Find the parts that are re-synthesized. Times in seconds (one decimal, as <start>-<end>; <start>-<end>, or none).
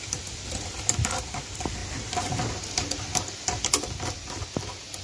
none